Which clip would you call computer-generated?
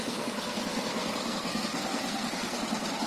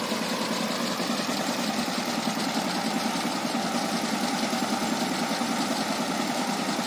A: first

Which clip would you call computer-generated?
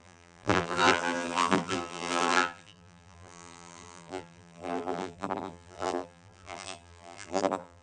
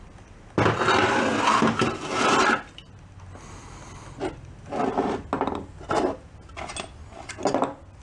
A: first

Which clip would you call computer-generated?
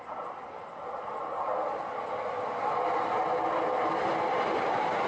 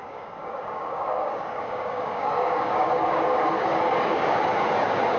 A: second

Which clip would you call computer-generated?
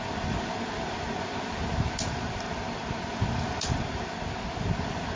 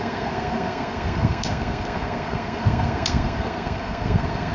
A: second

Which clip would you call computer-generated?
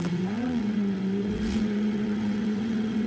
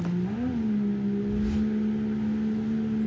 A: first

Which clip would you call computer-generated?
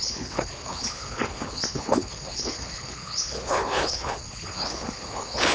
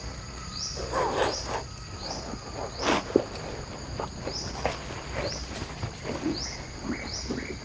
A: first